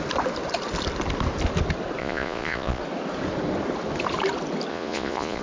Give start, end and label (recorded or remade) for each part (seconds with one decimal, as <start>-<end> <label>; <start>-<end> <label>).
0.0-2.0 recorded; 2.0-2.8 remade; 2.8-4.7 recorded; 4.7-5.4 remade